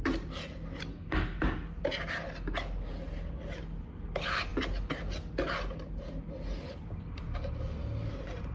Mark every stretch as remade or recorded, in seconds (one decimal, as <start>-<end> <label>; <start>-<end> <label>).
0.0-0.9 recorded; 0.9-1.4 remade; 1.4-8.5 recorded